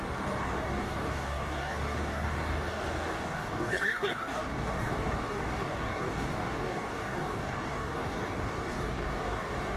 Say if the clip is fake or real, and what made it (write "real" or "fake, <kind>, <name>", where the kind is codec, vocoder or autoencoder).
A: fake, codec, DAC